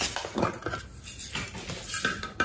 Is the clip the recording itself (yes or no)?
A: yes